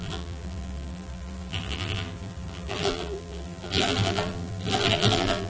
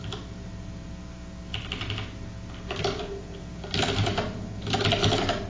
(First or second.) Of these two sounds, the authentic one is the second